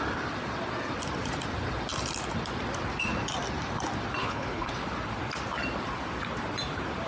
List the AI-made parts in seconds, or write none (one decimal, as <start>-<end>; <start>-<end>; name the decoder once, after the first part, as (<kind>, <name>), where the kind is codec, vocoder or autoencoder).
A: 4.2-4.7 (codec, HILCodec)